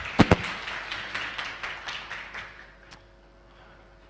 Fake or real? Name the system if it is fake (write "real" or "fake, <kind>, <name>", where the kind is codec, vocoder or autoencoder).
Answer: real